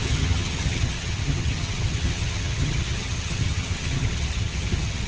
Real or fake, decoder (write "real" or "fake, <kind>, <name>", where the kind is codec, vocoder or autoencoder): fake, vocoder, HiFi-GAN